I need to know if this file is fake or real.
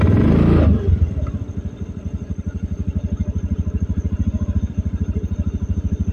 real